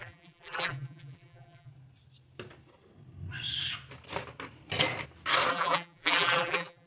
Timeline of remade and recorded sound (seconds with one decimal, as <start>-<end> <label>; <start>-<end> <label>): 0.0-1.7 remade; 1.7-5.5 recorded; 5.5-6.9 remade